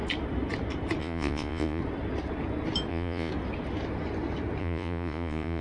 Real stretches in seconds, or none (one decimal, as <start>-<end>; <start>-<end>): 0.0-1.0; 1.8-2.9; 3.3-4.6